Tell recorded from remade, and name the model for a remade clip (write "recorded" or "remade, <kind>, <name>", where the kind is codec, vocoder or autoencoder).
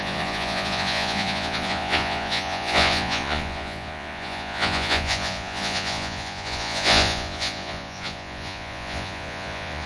remade, vocoder, Vocos